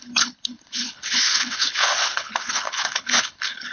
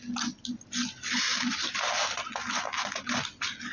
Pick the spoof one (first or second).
first